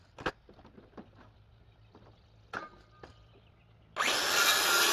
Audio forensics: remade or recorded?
recorded